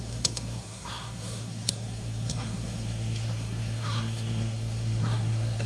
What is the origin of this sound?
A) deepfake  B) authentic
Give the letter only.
A